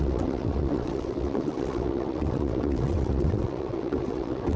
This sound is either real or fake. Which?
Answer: fake